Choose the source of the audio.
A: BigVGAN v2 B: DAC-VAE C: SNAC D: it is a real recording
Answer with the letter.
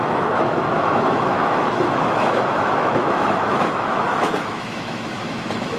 B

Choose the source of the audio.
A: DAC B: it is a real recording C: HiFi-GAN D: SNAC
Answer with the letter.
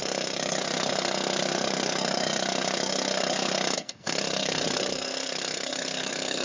D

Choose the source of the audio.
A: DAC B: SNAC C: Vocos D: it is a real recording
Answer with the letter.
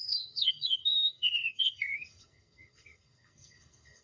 B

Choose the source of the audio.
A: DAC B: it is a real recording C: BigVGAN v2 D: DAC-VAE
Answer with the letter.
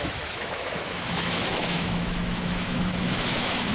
D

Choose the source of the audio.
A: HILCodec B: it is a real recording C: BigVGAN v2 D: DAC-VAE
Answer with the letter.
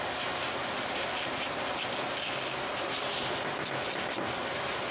B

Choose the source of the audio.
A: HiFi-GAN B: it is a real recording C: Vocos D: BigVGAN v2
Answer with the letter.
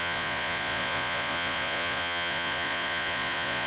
C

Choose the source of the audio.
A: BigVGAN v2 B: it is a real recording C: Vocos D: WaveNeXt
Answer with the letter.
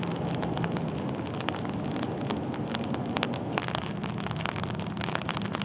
B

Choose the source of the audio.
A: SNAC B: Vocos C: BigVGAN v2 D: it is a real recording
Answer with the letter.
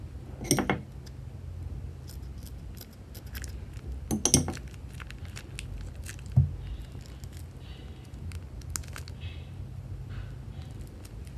D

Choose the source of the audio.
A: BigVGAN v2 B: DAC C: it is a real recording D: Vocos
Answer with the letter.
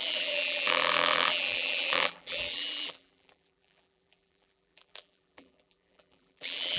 A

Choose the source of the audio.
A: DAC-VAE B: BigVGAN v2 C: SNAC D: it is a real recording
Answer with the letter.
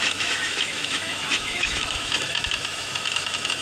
A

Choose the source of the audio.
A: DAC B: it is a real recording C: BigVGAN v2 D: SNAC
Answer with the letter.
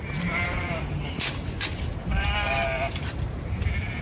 C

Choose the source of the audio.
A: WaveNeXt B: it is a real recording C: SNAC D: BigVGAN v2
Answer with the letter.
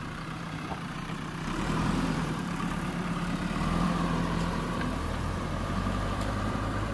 D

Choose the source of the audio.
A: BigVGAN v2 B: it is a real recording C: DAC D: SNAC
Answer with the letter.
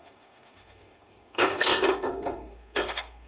D